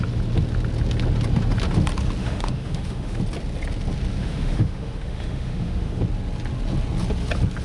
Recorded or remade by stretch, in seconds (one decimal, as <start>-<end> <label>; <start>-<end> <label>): 0.0-2.2 recorded; 2.2-3.2 remade; 3.2-4.2 recorded; 4.2-6.0 remade; 6.0-7.6 recorded